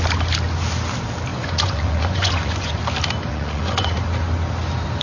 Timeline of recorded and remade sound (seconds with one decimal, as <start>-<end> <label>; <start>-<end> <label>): 0.0-1.3 recorded; 1.3-2.8 remade; 2.8-3.3 recorded; 3.3-4.0 remade; 4.0-5.0 recorded